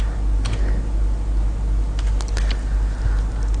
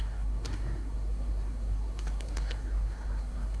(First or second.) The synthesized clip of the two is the second